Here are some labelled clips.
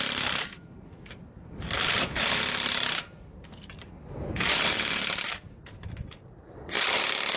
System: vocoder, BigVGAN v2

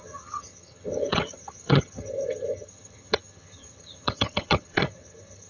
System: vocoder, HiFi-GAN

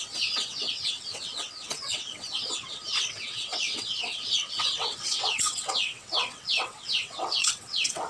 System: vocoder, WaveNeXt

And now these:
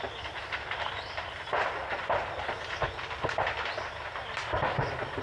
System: none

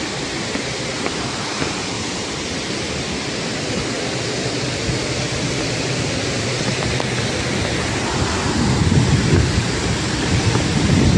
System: none